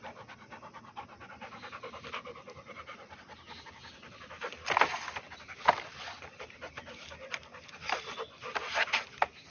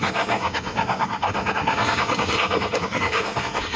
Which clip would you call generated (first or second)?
second